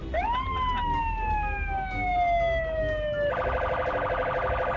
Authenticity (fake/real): real